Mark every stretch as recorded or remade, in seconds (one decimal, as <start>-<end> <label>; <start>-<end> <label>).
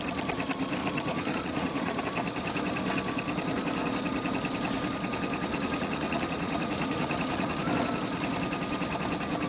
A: 0.0-0.8 recorded; 0.8-2.0 remade; 2.0-5.5 recorded; 5.5-7.6 remade; 7.6-9.5 recorded